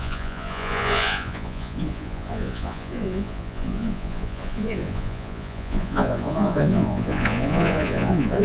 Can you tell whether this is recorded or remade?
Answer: remade